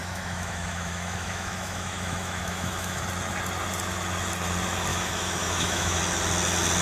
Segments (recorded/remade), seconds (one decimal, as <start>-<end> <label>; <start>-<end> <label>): 0.0-3.0 remade; 3.0-4.9 recorded; 4.9-6.0 remade; 6.0-6.8 recorded